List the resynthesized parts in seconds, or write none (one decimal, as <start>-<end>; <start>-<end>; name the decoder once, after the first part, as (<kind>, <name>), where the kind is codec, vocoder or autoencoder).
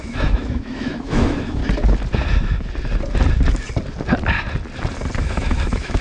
0.0-1.6 (autoencoder, DAC-VAE); 5.2-6.0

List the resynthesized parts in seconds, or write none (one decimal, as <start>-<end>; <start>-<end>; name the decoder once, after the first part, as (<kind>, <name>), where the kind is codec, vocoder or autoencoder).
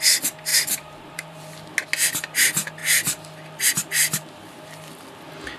0.5-1.4 (vocoder, BigVGAN v2)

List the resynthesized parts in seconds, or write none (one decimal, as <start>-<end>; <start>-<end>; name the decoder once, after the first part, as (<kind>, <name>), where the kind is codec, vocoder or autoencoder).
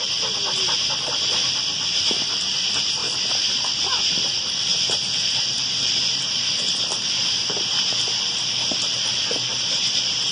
none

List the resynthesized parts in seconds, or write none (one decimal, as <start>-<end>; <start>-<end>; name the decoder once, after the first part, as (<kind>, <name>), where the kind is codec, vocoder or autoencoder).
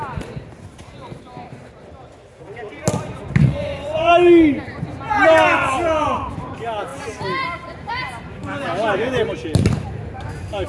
3.4-4.1 (vocoder, Vocos)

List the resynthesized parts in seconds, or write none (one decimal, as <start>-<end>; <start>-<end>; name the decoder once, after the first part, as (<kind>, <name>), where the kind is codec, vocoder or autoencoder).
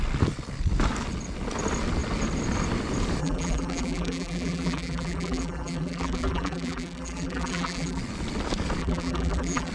3.2-8.0 (vocoder, BigVGAN v2); 8.8-9.7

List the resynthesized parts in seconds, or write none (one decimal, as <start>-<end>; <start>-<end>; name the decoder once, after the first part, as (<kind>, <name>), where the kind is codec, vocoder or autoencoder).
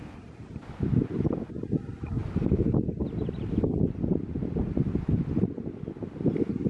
none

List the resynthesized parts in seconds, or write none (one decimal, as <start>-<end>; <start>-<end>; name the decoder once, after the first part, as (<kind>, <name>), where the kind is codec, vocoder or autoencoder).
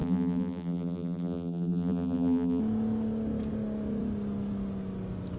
0.0-2.6 (vocoder, BigVGAN v2)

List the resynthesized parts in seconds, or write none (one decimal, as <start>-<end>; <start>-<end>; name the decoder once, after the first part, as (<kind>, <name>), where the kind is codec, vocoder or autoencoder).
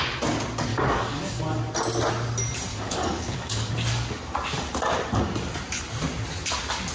0.7-1.4 (codec, DAC); 2.7-3.7